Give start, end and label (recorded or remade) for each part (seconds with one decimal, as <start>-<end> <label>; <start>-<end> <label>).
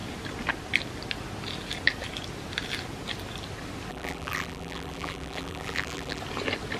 0.0-3.9 recorded; 3.9-6.2 remade; 6.2-6.8 recorded